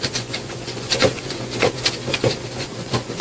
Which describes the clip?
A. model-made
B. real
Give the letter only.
A